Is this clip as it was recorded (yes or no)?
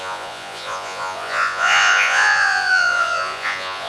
no